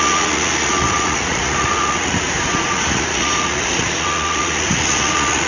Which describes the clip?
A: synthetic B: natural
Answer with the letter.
A